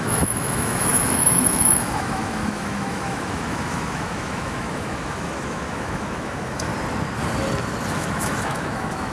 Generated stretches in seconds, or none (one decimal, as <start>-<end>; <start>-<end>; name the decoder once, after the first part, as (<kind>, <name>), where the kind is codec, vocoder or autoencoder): 0.0-6.7 (autoencoder, DAC-VAE); 7.9-9.1